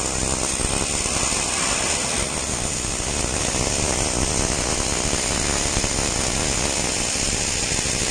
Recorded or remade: recorded